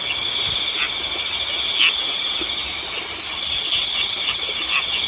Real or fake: real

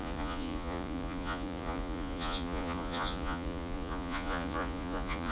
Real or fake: fake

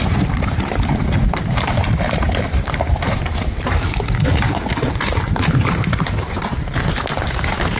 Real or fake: fake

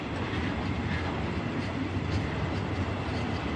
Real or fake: real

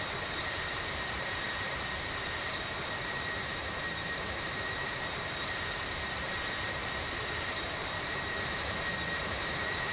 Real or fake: fake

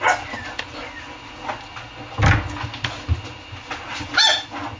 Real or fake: real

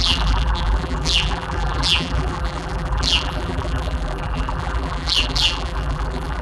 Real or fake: fake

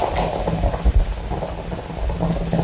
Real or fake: real